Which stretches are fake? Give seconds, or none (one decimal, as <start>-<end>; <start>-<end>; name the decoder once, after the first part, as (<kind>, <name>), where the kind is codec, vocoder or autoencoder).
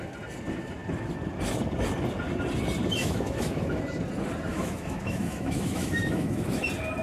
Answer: 3.0-3.8 (autoencoder, DAC-VAE); 4.5-6.6